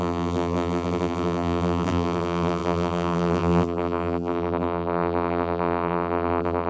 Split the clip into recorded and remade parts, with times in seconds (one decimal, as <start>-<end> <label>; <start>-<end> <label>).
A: 0.0-6.7 remade

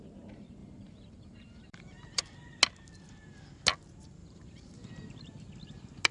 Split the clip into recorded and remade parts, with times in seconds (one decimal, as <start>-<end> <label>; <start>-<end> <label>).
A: 0.0-0.6 recorded; 0.6-2.2 remade; 2.2-4.2 recorded; 4.2-4.9 remade; 4.9-6.1 recorded

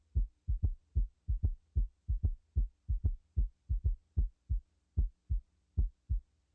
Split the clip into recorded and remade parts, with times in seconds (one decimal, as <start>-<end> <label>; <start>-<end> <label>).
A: 0.0-6.5 recorded